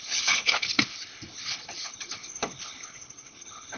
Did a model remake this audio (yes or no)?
yes